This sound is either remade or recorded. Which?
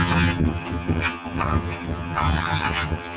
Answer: remade